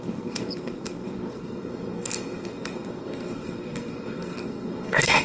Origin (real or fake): fake